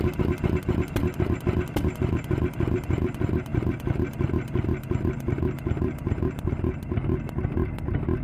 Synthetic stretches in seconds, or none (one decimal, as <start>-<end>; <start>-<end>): 3.5-6.3